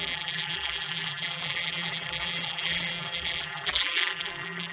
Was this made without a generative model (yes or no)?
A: no